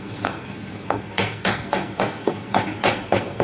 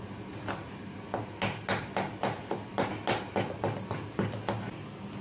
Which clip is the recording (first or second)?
second